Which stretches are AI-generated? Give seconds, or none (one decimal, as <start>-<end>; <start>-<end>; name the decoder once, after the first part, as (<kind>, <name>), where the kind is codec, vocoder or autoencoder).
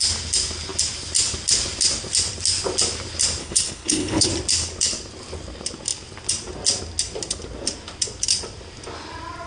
3.4-4.3 (codec, HILCodec)